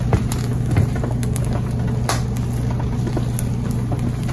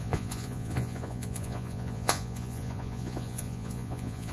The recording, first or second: first